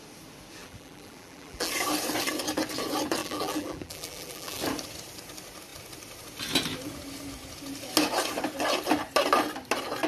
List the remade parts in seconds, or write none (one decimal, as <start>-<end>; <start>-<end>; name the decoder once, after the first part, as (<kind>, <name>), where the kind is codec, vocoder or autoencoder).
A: 0.6-1.7 (vocoder, BigVGAN v2); 3.2-4.6